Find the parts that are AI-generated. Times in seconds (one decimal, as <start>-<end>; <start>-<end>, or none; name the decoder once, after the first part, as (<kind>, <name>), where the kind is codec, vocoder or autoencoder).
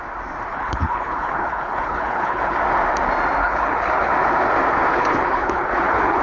0.5-2.6 (codec, HILCodec); 3.4-4.1; 4.9-6.2